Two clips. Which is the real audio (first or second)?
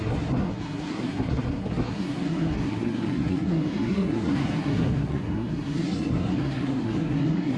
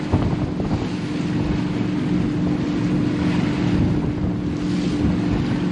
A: second